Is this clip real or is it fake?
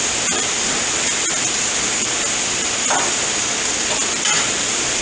fake